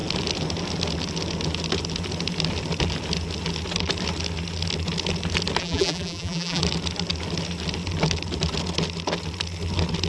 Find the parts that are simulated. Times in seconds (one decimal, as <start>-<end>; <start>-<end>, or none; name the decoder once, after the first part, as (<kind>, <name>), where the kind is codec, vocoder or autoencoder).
5.6-6.6 (vocoder, BigVGAN v2)